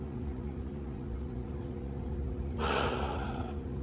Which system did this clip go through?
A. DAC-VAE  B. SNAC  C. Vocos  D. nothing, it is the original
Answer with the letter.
C